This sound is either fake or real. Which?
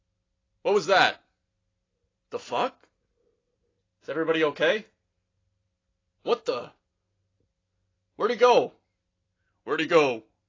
real